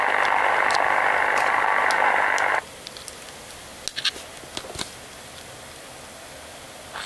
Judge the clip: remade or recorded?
recorded